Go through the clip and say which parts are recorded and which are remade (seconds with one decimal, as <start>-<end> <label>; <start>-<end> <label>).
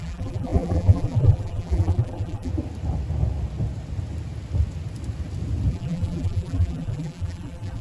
0.0-2.5 remade; 2.5-5.7 recorded; 5.7-7.8 remade